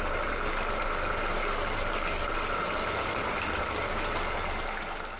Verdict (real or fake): real